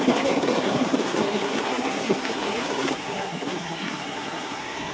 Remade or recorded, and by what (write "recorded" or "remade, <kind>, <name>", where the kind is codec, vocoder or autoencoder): remade, codec, SNAC